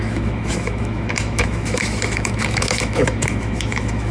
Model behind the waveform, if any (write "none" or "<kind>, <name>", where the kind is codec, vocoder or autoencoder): autoencoder, DAC-VAE